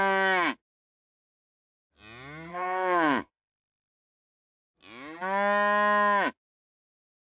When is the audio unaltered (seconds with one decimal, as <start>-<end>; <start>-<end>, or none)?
0.0-2.5; 3.9-7.2